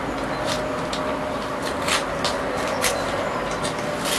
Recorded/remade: recorded